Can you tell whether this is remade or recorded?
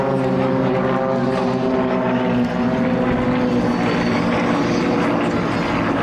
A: recorded